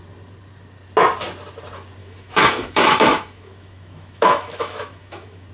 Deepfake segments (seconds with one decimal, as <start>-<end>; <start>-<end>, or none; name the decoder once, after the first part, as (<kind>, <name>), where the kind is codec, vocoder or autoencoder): 2.0-5.5 (autoencoder, DAC-VAE)